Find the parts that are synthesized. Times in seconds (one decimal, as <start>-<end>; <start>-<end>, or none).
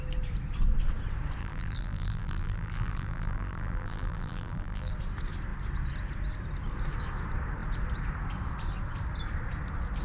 1.4-4.9